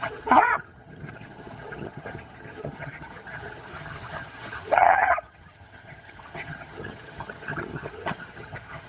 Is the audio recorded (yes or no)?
no